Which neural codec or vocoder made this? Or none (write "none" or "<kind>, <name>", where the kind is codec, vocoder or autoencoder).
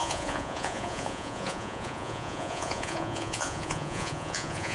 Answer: vocoder, Vocos